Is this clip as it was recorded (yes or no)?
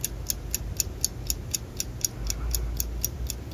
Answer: yes